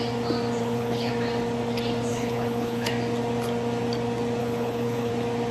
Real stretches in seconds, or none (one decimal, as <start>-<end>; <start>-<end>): 0.0-0.6; 1.1-2.1; 2.9-4.4; 5.1-5.5